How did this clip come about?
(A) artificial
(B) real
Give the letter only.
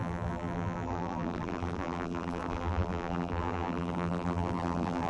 A